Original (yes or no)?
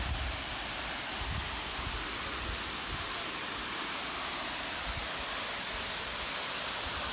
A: yes